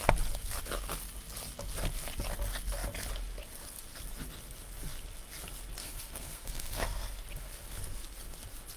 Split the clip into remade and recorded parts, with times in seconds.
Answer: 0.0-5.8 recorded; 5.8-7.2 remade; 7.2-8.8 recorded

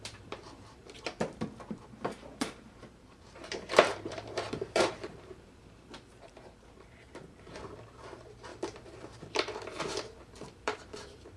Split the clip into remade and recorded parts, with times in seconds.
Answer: 0.0-11.4 remade

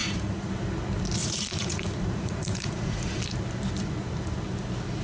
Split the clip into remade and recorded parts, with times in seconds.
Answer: 0.0-0.5 remade; 0.5-1.2 recorded; 1.2-3.2 remade; 3.2-5.0 recorded